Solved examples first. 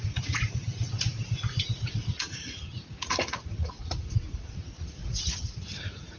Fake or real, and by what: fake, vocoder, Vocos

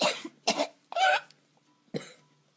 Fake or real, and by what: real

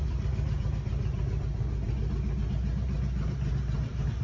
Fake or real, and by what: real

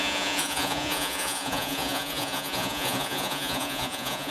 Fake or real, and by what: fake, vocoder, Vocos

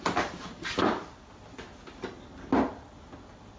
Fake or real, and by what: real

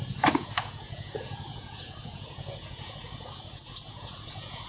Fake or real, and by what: fake, vocoder, Vocos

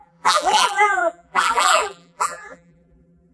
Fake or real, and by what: fake, vocoder, BigVGAN v2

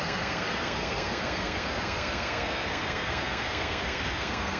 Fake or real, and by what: fake, codec, SNAC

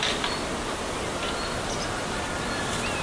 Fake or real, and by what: real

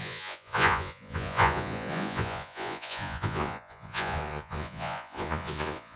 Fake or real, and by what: fake, vocoder, Vocos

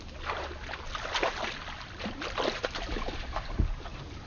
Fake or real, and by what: real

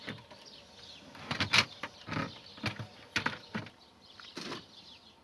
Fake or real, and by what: real